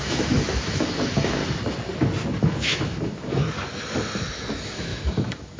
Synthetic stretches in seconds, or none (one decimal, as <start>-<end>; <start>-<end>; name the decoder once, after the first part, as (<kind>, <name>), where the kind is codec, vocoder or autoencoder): 0.0-1.4 (autoencoder, DAC-VAE); 2.4-3.4; 4.5-5.6